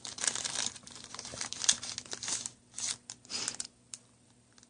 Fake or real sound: real